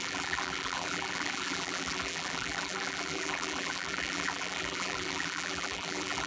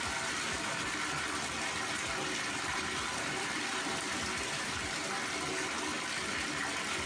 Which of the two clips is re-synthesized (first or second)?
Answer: first